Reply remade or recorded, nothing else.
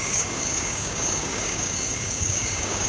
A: remade